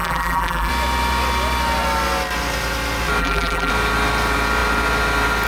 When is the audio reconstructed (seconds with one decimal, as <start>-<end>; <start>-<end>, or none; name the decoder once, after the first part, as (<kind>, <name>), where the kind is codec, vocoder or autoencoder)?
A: 0.0-0.7 (vocoder, BigVGAN v2); 3.2-3.7